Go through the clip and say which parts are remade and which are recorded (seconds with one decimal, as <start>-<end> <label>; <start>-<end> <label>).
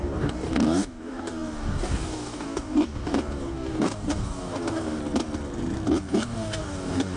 0.0-5.0 remade; 5.0-6.1 recorded; 6.1-7.2 remade